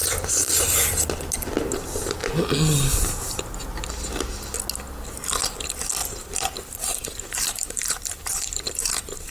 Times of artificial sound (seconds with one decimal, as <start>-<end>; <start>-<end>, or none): 6.0-9.3